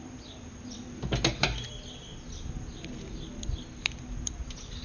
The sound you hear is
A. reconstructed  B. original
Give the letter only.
B